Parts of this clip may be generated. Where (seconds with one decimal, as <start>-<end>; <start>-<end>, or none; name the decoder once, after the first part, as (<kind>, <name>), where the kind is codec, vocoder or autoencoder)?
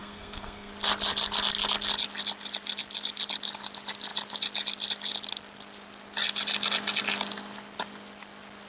0.0-0.7 (codec, SNAC)